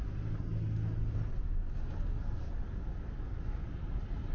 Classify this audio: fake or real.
real